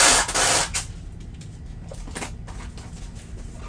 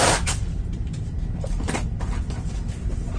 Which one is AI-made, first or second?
second